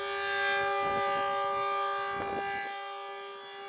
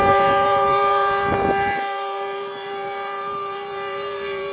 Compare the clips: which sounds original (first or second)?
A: first